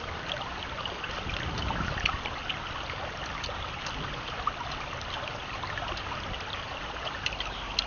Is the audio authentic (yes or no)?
yes